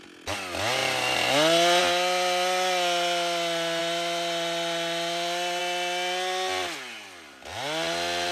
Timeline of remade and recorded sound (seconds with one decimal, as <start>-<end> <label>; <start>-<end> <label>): 0.0-8.3 recorded